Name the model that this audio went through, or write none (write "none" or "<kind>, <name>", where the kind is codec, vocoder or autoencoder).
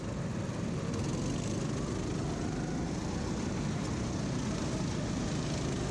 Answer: none